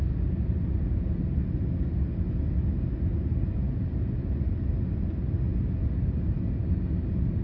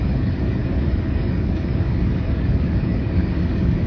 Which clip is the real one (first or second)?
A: first